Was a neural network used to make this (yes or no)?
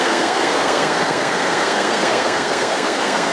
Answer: yes